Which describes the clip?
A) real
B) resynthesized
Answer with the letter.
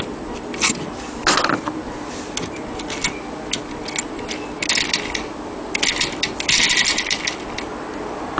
A